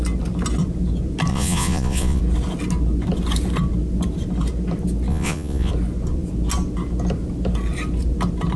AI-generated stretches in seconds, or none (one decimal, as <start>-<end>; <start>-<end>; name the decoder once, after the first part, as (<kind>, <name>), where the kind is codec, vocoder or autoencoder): 1.3-2.2 (vocoder, Vocos); 5.1-5.7